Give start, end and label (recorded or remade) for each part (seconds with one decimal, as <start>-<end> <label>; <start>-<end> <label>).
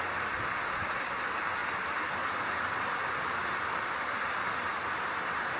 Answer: 0.0-5.6 recorded